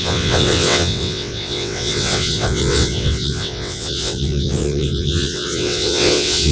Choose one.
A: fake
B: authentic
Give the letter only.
A